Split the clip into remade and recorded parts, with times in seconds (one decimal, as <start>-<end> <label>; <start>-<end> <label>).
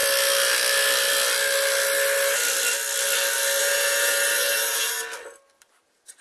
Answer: 0.0-3.6 recorded; 3.6-4.9 remade; 4.9-6.2 recorded